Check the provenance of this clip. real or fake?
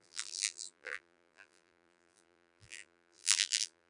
fake